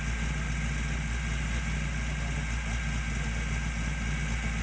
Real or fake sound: real